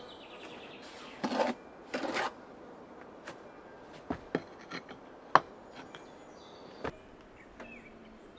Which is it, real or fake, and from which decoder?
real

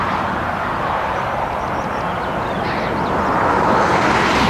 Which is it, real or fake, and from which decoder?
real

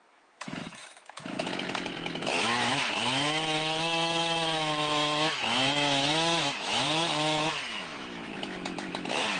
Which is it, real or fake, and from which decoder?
fake, autoencoder, DAC-VAE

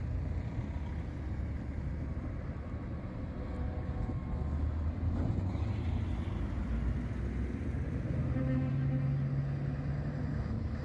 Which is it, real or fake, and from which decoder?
real